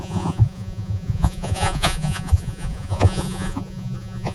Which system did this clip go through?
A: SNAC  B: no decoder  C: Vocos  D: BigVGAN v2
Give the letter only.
C